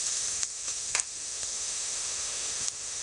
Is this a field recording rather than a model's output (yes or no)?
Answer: no